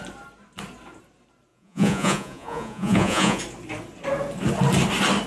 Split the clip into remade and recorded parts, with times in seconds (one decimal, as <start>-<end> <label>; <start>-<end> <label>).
0.0-1.5 recorded; 1.5-3.4 remade; 3.4-5.3 recorded